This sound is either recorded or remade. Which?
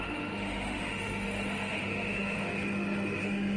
remade